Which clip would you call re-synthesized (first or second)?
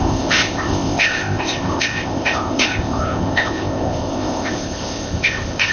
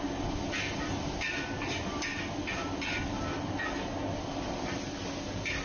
first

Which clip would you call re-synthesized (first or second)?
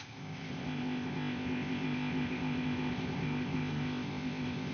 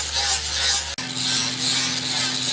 first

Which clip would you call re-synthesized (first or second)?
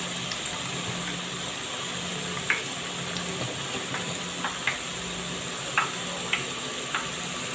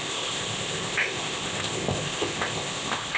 second